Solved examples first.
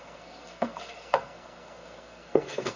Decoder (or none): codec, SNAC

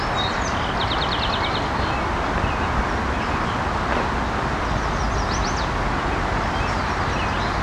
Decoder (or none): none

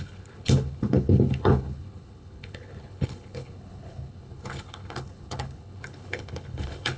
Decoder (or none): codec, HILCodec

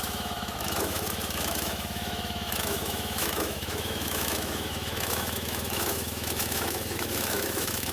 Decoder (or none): autoencoder, DAC-VAE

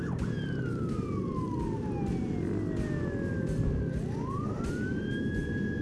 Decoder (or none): none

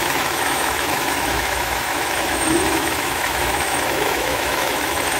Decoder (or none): autoencoder, DAC-VAE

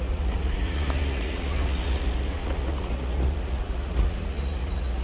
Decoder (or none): vocoder, Vocos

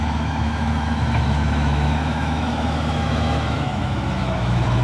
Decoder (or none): autoencoder, DAC-VAE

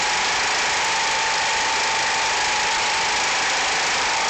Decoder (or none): none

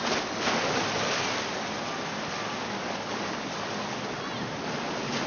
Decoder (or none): none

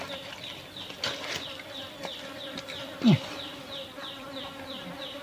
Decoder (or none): none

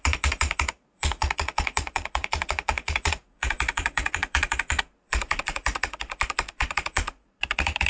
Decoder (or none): vocoder, Vocos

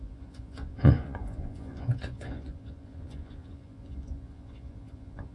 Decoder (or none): vocoder, Vocos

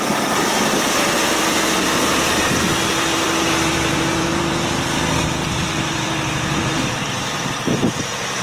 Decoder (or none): vocoder, BigVGAN v2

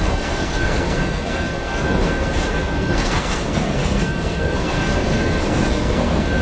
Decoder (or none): codec, SNAC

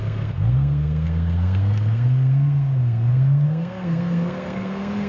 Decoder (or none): codec, SNAC